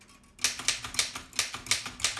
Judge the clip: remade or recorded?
recorded